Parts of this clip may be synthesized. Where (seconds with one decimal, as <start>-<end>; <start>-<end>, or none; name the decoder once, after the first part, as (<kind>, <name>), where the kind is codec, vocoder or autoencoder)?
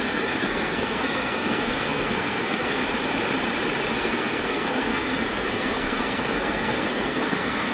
0.0-2.8 (codec, SNAC); 3.9-7.7